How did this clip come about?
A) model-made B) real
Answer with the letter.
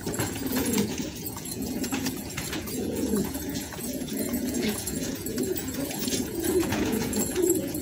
A